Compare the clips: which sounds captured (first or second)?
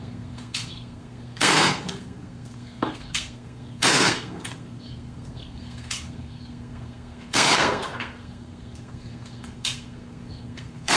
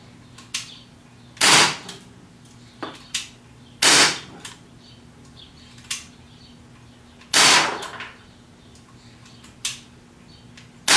second